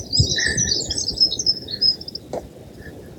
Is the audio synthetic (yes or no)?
no